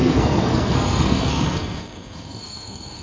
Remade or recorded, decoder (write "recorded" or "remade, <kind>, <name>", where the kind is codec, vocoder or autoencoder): remade, codec, SNAC